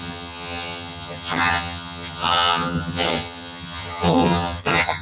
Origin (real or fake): fake